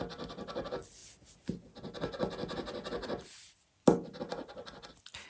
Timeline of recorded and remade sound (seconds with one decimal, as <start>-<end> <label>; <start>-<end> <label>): 0.0-5.3 recorded